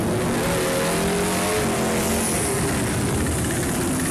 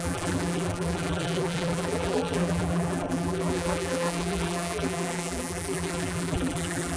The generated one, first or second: second